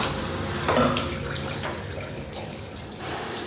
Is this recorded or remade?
remade